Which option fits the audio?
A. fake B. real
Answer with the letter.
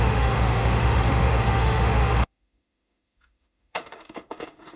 A